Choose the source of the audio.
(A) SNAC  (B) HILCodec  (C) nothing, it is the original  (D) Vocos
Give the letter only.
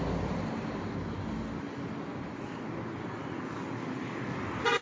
C